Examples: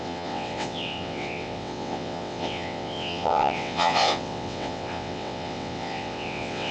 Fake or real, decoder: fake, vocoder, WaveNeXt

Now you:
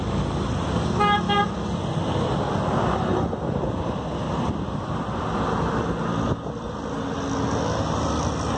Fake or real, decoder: real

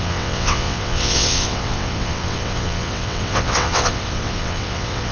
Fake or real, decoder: fake, vocoder, WaveNeXt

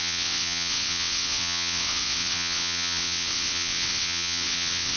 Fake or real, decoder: fake, vocoder, WaveNeXt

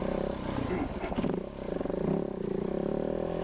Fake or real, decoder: real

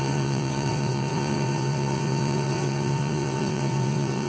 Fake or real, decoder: fake, vocoder, WaveNeXt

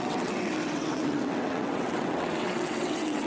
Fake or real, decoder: fake, vocoder, WaveNeXt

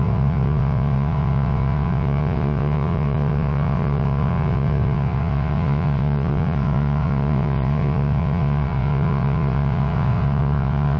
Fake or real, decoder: fake, vocoder, WaveNeXt